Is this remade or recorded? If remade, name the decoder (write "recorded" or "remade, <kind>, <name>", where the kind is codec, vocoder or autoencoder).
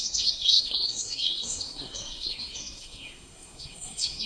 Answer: remade, codec, SNAC